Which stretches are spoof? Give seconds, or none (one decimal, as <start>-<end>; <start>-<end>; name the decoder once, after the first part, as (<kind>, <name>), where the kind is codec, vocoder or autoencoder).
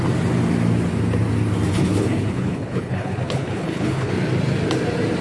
1.7-4.1 (codec, HILCodec)